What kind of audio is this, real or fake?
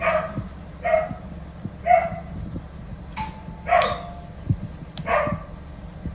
real